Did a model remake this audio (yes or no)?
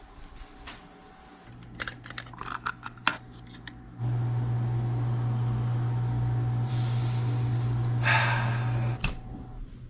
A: no